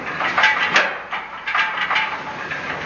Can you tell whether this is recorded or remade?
recorded